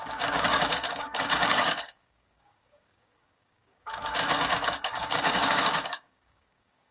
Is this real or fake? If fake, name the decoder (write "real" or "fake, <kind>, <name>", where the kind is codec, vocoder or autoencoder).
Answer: fake, codec, DAC